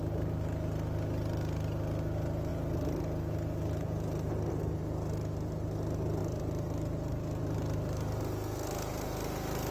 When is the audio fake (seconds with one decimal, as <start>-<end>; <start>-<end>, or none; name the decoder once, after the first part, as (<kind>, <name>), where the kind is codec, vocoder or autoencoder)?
6.2-8.2 (vocoder, BigVGAN v2)